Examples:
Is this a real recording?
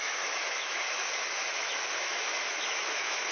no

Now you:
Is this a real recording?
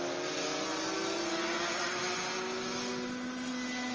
yes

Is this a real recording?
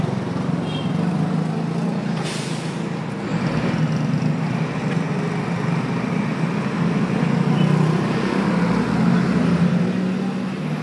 yes